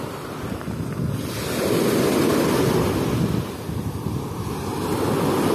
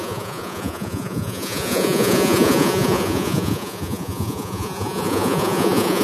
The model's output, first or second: second